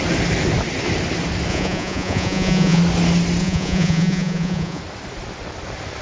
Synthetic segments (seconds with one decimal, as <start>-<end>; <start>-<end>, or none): 1.5-2.8; 3.4-4.8